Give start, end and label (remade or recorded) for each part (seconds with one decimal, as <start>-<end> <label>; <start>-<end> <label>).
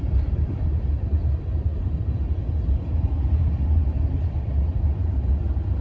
0.0-1.7 remade; 1.7-2.5 recorded; 2.5-5.8 remade